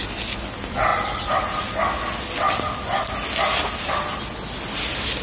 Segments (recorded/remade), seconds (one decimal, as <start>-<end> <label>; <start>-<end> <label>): 0.0-5.2 recorded